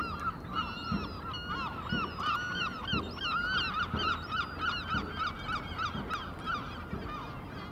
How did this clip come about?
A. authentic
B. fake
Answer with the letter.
A